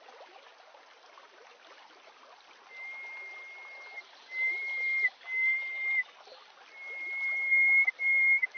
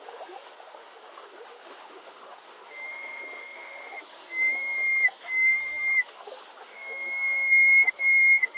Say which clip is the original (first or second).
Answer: first